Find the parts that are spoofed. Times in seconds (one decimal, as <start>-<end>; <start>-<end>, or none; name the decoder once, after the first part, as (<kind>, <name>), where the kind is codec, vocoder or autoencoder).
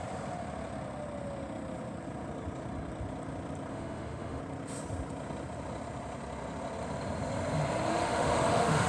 3.7-4.4 (autoencoder, DAC-VAE); 7.9-8.9